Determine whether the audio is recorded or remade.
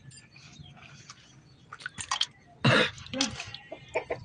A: recorded